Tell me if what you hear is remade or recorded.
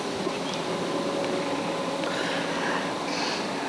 recorded